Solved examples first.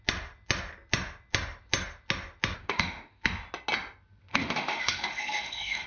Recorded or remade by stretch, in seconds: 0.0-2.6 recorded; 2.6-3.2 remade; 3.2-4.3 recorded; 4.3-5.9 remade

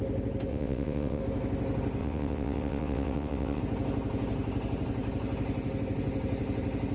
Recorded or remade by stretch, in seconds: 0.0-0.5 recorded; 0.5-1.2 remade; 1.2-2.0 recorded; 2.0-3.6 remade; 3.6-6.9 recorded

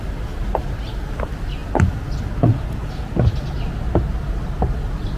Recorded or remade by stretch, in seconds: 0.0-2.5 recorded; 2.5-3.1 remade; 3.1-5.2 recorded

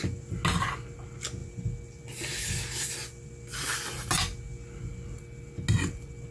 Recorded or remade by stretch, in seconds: 0.0-6.3 recorded

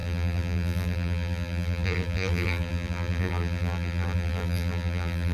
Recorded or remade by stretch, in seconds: 0.0-5.3 remade

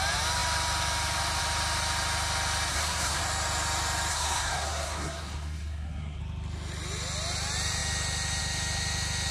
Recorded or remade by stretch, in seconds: 0.0-2.7 recorded; 2.7-3.2 remade; 3.2-4.1 recorded; 4.1-6.2 remade; 6.2-9.3 recorded

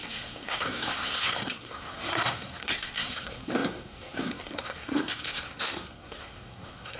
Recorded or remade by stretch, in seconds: 0.0-7.0 remade